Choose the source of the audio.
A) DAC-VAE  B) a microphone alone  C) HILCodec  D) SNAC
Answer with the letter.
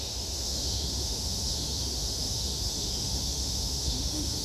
A